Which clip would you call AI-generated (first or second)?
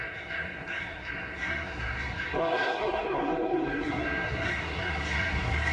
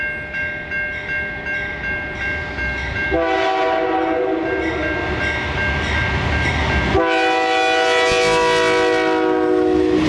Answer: first